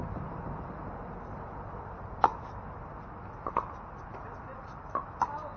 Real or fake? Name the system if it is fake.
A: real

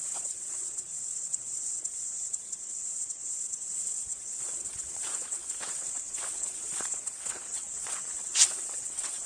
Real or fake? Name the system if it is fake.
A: fake, vocoder, WaveNeXt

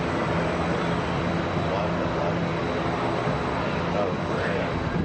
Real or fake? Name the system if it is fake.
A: real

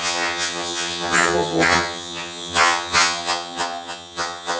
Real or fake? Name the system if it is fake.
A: fake, vocoder, HiFi-GAN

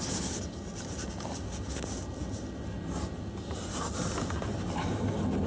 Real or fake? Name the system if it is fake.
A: real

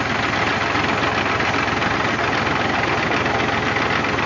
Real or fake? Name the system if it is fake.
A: real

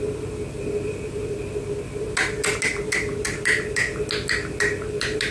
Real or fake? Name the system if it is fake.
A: real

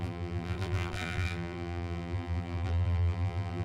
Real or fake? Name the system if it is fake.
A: fake, vocoder, BigVGAN v2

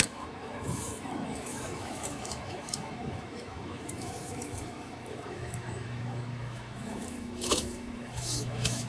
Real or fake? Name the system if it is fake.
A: fake, autoencoder, DAC-VAE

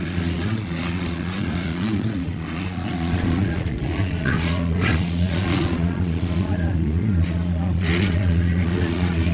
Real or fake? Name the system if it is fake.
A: fake, vocoder, Vocos